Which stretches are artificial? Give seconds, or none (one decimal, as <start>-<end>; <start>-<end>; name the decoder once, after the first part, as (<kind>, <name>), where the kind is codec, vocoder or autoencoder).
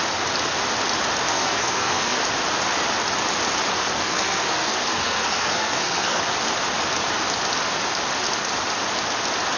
1.3-2.2 (codec, SNAC); 3.8-6.2